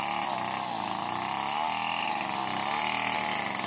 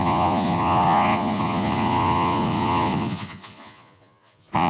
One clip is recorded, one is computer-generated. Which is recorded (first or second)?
first